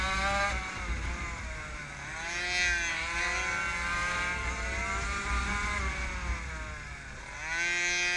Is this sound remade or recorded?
recorded